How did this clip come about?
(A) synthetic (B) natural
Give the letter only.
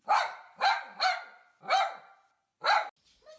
B